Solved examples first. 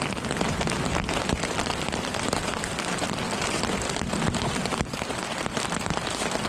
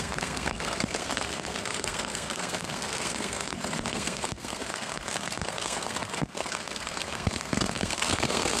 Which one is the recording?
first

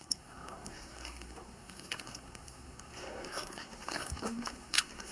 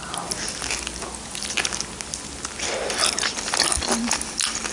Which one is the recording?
second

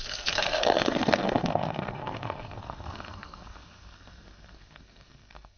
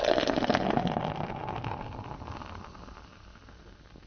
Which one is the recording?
second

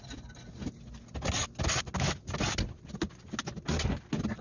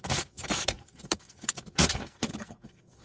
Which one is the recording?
first